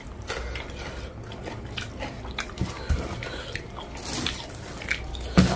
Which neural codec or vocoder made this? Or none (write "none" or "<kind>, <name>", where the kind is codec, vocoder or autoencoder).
none